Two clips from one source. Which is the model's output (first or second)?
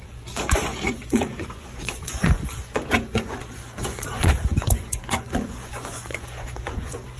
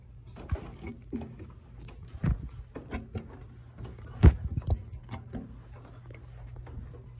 first